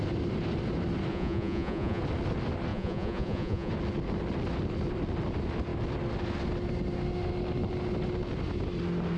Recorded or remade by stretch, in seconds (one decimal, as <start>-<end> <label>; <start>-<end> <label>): 0.0-1.1 recorded; 1.1-2.0 remade; 2.0-2.7 recorded; 2.7-3.7 remade; 3.7-9.2 recorded